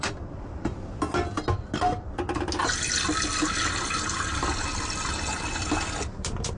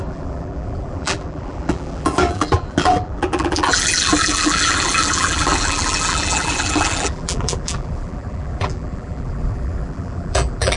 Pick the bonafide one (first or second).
first